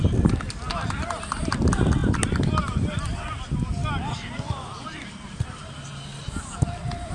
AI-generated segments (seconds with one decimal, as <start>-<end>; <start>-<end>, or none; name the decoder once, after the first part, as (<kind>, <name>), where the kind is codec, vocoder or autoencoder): none